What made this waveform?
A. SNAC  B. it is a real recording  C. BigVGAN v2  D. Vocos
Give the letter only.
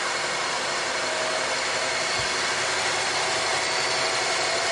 B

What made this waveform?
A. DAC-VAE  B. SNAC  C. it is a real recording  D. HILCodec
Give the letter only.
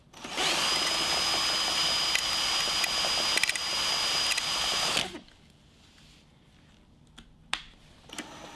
C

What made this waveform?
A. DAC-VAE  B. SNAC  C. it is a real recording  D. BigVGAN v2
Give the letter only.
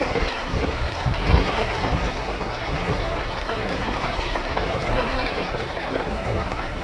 B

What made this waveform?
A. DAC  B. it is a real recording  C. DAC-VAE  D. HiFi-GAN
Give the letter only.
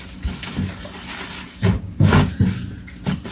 B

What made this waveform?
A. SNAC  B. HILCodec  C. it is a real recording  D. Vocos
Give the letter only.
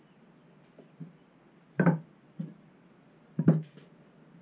C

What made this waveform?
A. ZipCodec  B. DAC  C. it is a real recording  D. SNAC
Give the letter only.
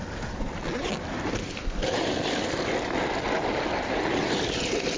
C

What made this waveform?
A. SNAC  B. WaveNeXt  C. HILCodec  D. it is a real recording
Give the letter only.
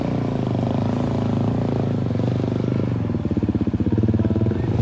D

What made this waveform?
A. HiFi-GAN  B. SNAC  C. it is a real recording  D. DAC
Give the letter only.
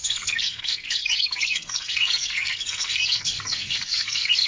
B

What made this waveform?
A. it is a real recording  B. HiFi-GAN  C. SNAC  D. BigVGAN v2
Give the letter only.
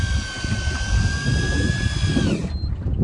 A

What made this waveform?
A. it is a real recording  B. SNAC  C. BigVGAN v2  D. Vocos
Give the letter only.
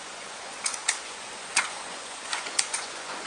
D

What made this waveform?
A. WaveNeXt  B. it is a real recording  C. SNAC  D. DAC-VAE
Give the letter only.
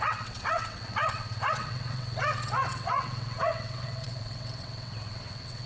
A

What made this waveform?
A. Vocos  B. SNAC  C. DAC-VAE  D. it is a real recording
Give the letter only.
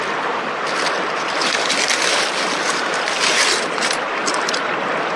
D